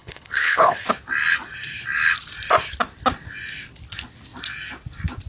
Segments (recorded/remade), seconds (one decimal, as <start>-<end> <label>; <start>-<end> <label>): 0.0-0.9 remade; 0.9-5.3 recorded